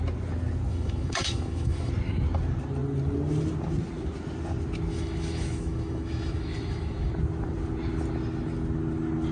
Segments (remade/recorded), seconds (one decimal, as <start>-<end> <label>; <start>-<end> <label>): 0.0-0.7 recorded; 0.7-1.9 remade; 1.9-4.9 recorded; 4.9-7.1 remade; 7.1-9.3 recorded